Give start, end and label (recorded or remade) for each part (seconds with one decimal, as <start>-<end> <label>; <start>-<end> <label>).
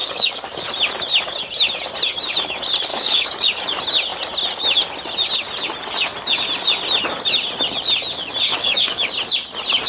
0.0-0.7 remade; 0.7-2.9 recorded; 2.9-3.4 remade; 3.4-8.5 recorded; 8.5-9.1 remade; 9.1-9.9 recorded